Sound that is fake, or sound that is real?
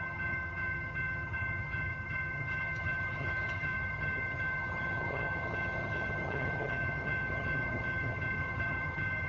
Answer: fake